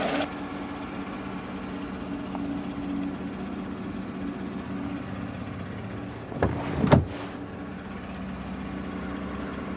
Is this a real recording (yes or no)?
yes